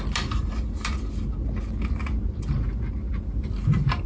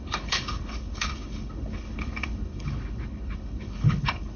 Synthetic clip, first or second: second